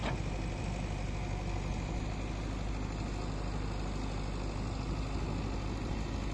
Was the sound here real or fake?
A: real